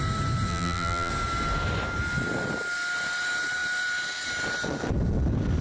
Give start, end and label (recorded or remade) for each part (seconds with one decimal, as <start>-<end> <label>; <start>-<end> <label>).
0.0-0.5 recorded; 0.5-1.1 remade; 1.1-5.6 recorded